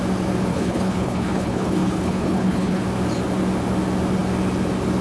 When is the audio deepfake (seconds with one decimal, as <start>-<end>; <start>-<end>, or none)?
0.5-2.8